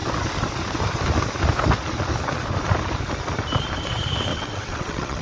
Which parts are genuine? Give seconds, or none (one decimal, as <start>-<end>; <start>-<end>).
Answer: 0.0-4.3